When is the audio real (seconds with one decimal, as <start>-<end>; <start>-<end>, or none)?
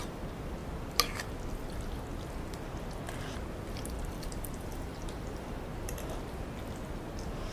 0.6-3.7; 5.7-7.5